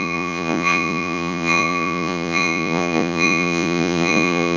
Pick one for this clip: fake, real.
fake